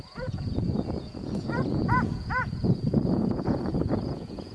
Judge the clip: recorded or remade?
remade